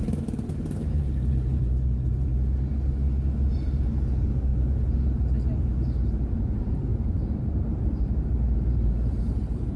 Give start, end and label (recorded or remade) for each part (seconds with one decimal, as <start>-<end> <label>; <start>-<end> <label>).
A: 0.0-2.3 remade; 2.3-3.5 recorded; 3.5-9.8 remade

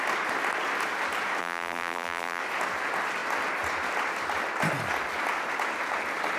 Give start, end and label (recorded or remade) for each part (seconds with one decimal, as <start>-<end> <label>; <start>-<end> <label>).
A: 0.0-1.4 recorded; 1.4-2.4 remade; 2.4-6.4 recorded

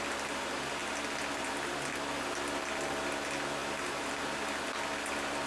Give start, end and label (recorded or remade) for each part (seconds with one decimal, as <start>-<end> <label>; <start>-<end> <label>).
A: 0.0-5.5 recorded

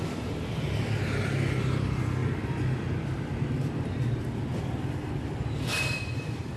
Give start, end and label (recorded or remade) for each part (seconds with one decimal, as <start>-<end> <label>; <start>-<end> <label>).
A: 0.0-6.6 remade

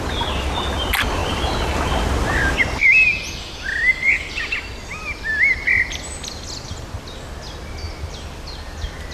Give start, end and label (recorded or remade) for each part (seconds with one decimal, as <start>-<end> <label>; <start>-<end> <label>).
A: 0.0-9.1 recorded

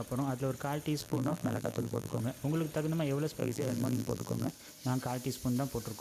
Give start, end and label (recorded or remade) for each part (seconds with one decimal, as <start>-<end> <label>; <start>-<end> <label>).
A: 0.0-1.0 recorded; 1.0-2.2 remade; 2.2-3.4 recorded; 3.4-4.5 remade; 4.5-6.0 recorded